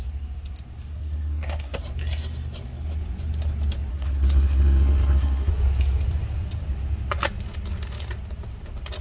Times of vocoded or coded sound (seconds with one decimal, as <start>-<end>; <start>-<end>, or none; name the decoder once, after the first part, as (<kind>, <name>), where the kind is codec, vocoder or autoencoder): 0.9-1.8 (codec, SNAC); 3.9-5.5